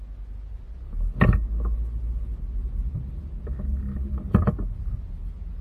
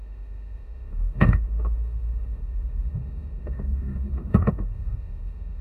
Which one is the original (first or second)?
first